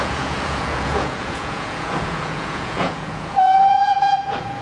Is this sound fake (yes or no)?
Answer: yes